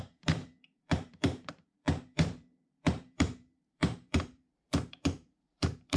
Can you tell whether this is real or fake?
fake